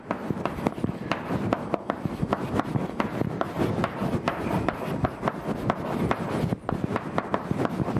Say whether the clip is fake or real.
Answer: real